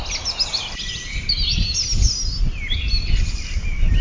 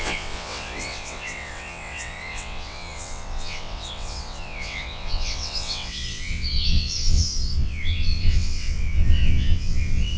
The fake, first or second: second